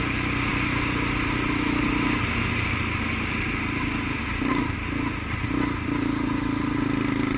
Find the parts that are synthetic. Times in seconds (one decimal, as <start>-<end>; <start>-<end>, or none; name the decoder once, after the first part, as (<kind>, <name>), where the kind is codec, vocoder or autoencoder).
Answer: none